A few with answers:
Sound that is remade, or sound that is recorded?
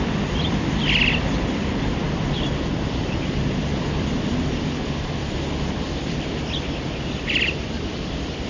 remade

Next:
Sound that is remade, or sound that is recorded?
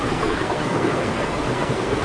remade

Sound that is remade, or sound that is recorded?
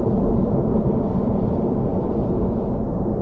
remade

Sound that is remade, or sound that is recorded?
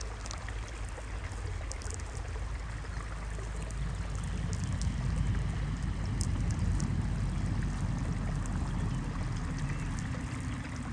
recorded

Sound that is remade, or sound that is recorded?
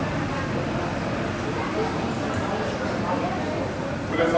recorded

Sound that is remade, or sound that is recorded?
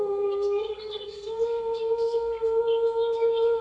remade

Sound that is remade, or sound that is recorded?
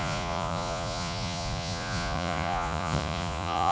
remade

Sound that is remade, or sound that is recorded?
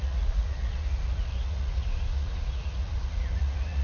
remade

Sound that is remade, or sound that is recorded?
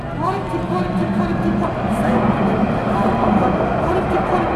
recorded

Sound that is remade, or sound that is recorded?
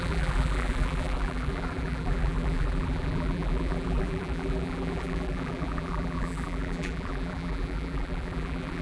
remade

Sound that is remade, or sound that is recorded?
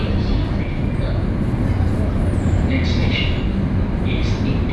recorded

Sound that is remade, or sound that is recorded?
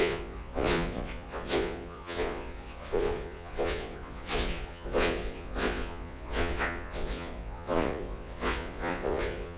remade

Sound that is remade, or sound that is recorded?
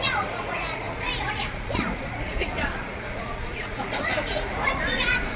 remade